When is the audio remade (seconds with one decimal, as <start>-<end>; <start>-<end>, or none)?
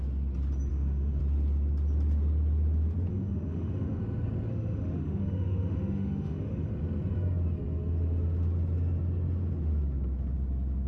0.7-1.2; 3.1-4.0; 4.5-6.7